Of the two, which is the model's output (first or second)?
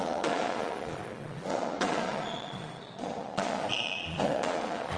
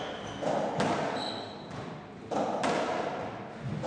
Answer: first